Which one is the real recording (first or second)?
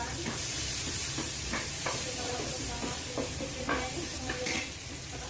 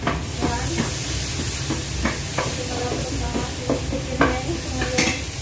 second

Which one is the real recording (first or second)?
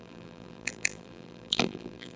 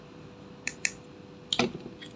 second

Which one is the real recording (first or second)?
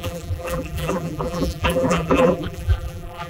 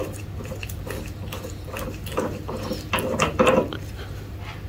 second